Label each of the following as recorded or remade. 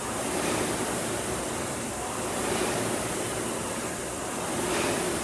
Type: recorded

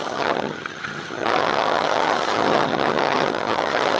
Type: remade